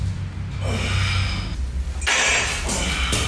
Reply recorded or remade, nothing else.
recorded